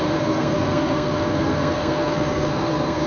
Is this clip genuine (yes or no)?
no